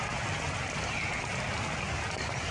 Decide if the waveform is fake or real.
real